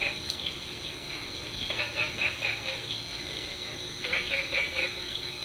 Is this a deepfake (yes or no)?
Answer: yes